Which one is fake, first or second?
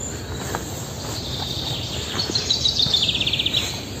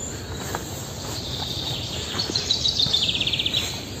second